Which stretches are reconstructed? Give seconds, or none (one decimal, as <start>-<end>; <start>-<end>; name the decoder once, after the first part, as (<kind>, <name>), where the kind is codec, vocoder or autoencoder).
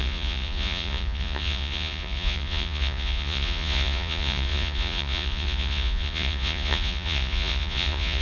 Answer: 0.0-8.2 (vocoder, Vocos)